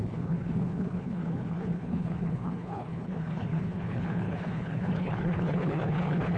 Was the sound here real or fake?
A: fake